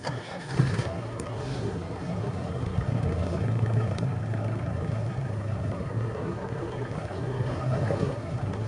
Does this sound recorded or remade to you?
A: remade